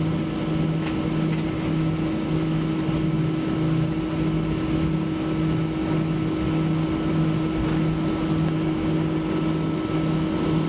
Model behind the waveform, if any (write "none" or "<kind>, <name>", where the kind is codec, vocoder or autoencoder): none